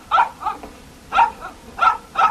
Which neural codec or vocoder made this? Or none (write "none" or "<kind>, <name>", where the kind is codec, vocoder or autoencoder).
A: none